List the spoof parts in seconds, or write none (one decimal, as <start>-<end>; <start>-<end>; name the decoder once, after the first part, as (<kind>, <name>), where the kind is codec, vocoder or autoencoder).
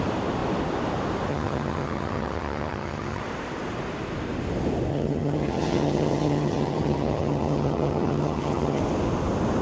1.3-3.2 (vocoder, HiFi-GAN); 4.9-8.8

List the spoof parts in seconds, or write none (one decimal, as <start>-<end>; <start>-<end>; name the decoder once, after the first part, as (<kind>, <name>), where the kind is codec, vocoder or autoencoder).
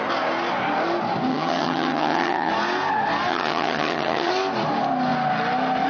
1.3-2.5 (vocoder, HiFi-GAN); 3.3-4.3